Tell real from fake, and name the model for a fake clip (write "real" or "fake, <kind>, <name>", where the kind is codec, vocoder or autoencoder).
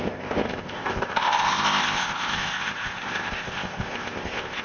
fake, codec, ZipCodec